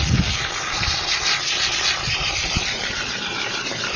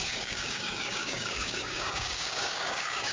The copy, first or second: second